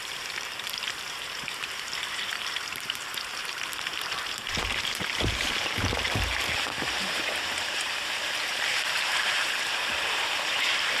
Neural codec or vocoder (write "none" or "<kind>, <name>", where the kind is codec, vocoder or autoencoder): vocoder, BigVGAN v2